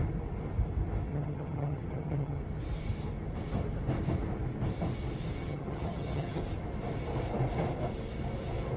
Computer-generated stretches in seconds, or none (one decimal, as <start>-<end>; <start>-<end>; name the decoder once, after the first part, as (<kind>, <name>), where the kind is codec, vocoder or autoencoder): 1.1-2.4 (vocoder, HiFi-GAN); 5.4-6.4

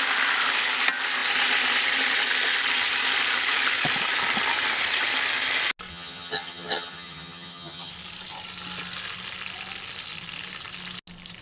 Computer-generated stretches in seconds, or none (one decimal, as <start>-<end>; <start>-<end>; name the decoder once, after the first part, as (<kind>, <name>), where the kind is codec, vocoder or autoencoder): 5.9-7.9 (vocoder, HiFi-GAN)

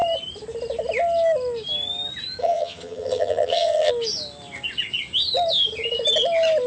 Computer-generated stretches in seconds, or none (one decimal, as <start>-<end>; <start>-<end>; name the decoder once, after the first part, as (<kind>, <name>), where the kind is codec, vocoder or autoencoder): 2.4-3.9 (vocoder, HiFi-GAN)